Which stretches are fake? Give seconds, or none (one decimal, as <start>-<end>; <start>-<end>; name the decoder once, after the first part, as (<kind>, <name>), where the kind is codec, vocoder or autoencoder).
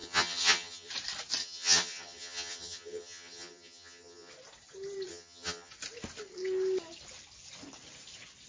0.0-0.9 (vocoder, HiFi-GAN); 1.4-4.3; 5.1-5.7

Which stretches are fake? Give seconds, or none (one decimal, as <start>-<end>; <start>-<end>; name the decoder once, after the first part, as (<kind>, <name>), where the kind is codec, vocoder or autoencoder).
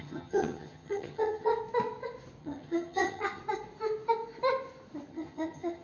0.0-1.5 (vocoder, HiFi-GAN); 2.4-3.4; 5.1-5.8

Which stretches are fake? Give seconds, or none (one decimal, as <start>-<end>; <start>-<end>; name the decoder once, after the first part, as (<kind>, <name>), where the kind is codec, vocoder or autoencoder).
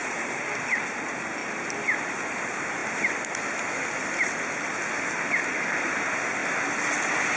none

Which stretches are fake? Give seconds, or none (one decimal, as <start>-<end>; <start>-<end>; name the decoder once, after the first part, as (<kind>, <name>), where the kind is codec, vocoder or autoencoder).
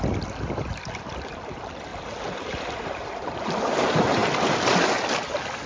none